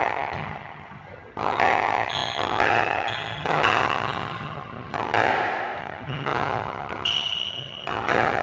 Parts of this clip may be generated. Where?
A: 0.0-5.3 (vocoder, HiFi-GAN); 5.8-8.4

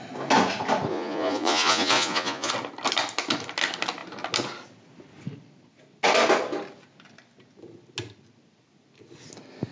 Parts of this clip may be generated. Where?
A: 0.9-2.5 (vocoder, Vocos)

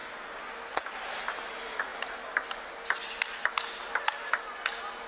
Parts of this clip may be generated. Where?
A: none